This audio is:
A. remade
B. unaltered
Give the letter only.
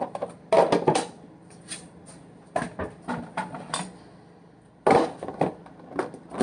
B